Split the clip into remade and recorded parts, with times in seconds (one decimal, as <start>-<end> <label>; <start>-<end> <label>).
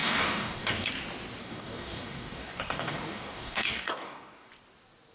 0.0-0.9 remade; 0.9-1.4 recorded; 1.4-4.5 remade; 4.5-5.1 recorded